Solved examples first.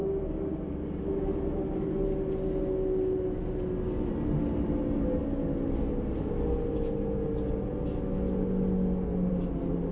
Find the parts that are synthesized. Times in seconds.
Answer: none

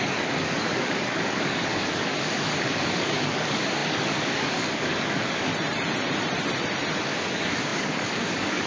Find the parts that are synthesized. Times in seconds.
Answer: 0.0-5.5; 7.0-8.7

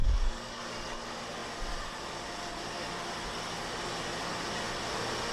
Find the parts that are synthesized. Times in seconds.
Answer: 0.0-0.6

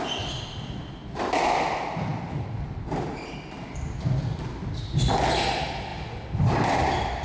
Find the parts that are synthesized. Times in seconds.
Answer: none

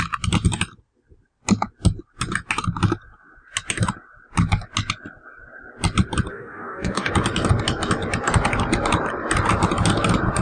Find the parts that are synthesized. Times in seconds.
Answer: 6.3-7.1

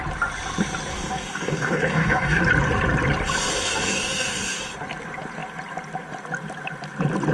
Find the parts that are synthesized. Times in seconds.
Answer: 0.9-2.4; 3.5-4.6

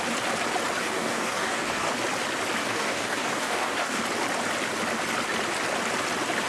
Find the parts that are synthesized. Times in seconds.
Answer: 0.8-1.9; 2.6-4.0